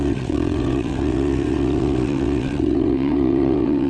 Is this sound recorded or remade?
remade